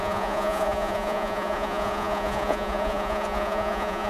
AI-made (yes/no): yes